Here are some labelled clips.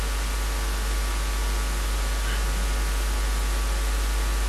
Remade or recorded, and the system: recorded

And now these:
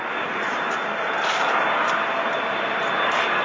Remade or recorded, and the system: recorded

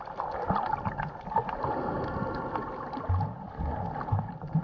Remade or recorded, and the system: recorded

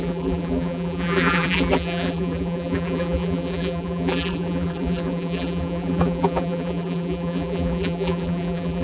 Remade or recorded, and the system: remade, vocoder, BigVGAN v2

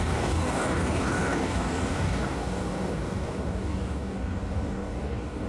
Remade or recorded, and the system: remade, codec, DAC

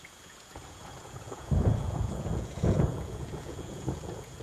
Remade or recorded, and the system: remade, vocoder, Vocos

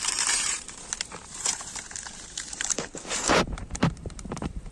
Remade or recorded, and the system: remade, vocoder, BigVGAN v2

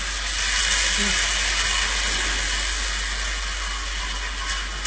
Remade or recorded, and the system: recorded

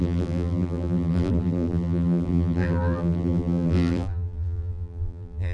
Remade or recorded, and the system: remade, vocoder, BigVGAN v2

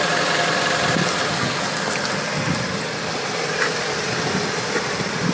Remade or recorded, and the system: remade, vocoder, BigVGAN v2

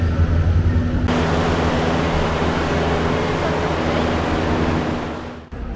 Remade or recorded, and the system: recorded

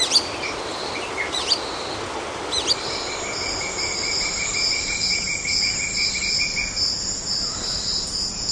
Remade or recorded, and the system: recorded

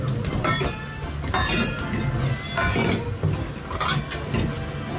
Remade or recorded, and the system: recorded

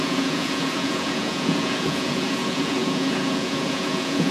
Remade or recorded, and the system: remade, vocoder, Vocos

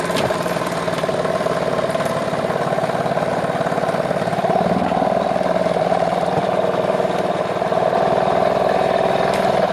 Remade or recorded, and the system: remade, vocoder, BigVGAN v2